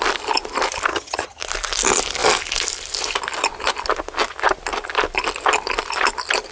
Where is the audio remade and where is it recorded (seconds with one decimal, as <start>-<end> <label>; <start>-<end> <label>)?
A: 0.0-0.9 recorded; 0.9-1.4 remade; 1.4-6.5 recorded